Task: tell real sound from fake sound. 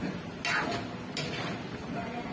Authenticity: real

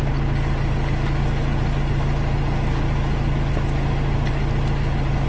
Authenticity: real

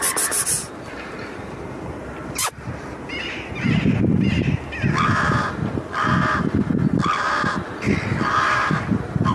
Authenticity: real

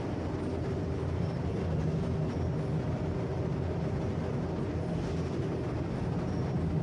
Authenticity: real